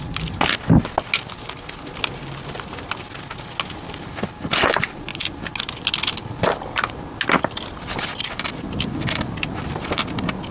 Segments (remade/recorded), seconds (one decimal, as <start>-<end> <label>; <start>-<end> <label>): 0.0-10.5 recorded

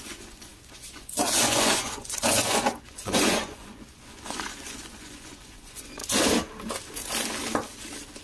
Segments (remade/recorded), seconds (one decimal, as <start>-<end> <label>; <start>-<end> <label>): 0.0-6.0 remade; 6.0-8.2 recorded

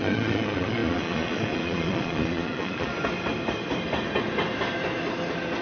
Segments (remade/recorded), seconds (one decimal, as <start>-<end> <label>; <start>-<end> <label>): 0.0-2.9 remade; 2.9-5.6 recorded

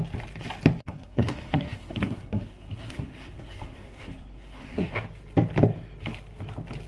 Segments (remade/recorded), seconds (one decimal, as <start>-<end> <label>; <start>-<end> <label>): 0.0-0.8 recorded; 0.8-4.9 remade; 4.9-6.9 recorded

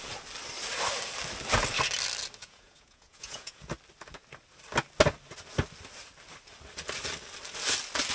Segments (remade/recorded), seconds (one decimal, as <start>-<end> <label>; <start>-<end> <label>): 0.0-2.4 recorded; 2.4-3.7 remade; 3.7-8.1 recorded

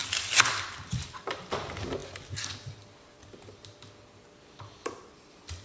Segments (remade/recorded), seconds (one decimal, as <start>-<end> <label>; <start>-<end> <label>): 0.0-5.6 recorded

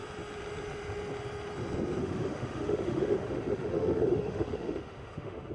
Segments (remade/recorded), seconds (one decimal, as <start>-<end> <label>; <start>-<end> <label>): 0.0-2.0 recorded; 2.0-5.5 remade